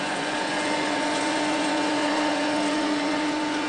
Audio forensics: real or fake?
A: fake